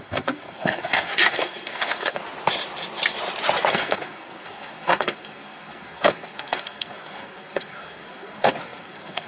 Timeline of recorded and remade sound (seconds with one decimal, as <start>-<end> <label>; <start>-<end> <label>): 0.0-2.2 remade; 2.2-3.7 recorded; 3.7-9.3 remade